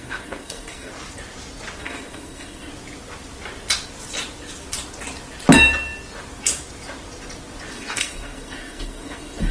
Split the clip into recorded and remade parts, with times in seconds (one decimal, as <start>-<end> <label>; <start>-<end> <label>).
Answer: 0.0-0.9 remade; 0.9-1.8 recorded; 1.8-2.7 remade; 2.7-7.7 recorded; 7.7-9.5 remade